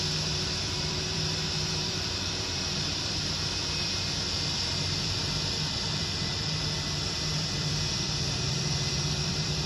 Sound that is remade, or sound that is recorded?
remade